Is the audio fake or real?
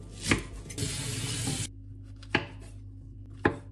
real